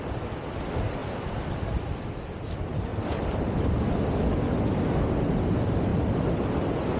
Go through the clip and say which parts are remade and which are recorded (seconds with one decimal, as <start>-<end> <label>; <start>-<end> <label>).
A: 0.0-1.0 recorded; 1.0-2.3 remade; 2.3-2.9 recorded; 2.9-3.5 remade; 3.5-5.9 recorded; 5.9-6.5 remade; 6.5-7.0 recorded